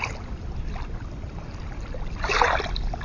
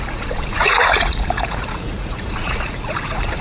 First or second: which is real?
first